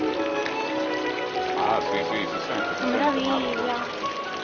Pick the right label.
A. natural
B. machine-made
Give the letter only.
A